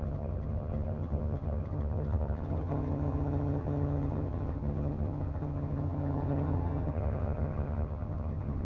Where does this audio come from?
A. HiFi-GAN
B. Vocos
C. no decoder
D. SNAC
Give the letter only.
A